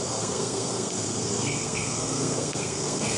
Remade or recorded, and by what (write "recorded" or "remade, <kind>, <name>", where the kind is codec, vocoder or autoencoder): remade, codec, SNAC